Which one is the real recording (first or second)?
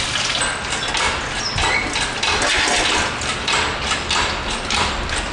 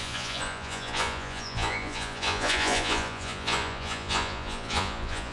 first